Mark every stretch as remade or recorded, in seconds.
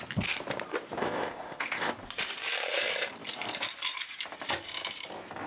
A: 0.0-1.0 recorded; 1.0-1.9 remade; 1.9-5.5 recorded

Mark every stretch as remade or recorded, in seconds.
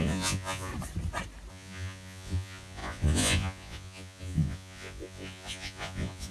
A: 0.0-0.7 remade; 0.7-1.5 recorded; 1.5-6.3 remade